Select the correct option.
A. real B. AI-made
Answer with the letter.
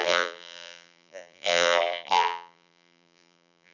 B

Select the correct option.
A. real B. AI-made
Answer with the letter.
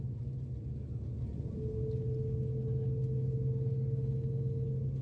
A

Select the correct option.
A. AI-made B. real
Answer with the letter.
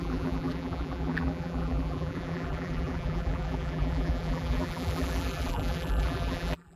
A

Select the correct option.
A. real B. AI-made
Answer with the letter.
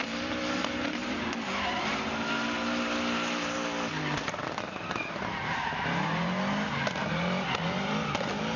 A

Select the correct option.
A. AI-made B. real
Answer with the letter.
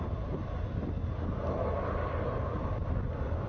B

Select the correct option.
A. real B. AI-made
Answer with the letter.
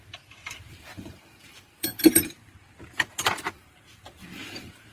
B